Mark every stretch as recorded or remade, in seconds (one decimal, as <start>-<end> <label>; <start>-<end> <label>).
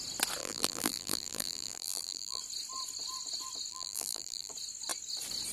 0.0-0.4 recorded; 0.4-2.4 remade; 2.4-3.7 recorded; 3.7-4.5 remade; 4.5-5.5 recorded